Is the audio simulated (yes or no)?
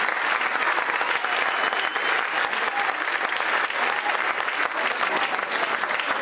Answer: no